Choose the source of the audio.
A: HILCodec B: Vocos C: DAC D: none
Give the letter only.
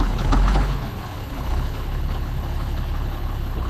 A